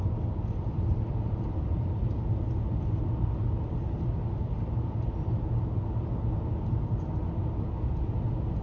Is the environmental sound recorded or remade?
recorded